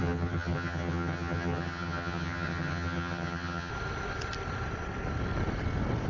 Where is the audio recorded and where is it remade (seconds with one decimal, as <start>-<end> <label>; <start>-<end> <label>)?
0.0-3.7 remade; 3.7-6.1 recorded